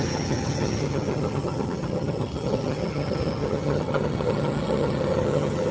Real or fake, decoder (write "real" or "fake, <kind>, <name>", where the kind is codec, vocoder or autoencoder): fake, vocoder, HiFi-GAN